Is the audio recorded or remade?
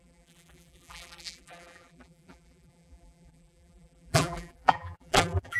remade